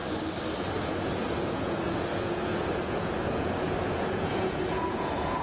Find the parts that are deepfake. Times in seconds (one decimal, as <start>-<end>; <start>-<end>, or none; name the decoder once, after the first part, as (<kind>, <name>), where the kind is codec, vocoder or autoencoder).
0.8-5.4 (vocoder, Vocos)